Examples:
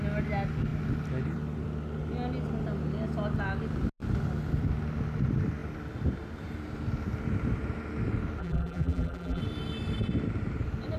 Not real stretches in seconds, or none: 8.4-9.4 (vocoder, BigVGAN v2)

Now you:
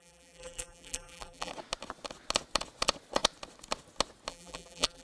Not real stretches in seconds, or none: 0.0-1.5 (vocoder, BigVGAN v2); 4.3-5.0

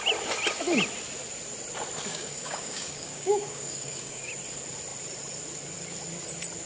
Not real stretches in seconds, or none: 2.1-4.3 (codec, DAC)

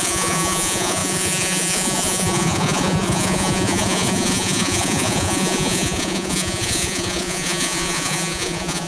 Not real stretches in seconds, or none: 0.0-8.9 (vocoder, Vocos)

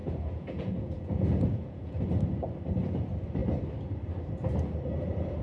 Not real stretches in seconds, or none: 0.0-2.0 (vocoder, Vocos)

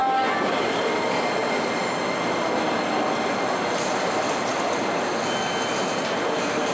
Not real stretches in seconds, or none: none

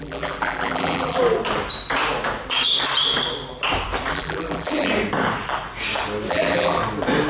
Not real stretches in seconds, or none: 0.0-1.2 (vocoder, BigVGAN v2); 4.1-4.9; 6.3-6.8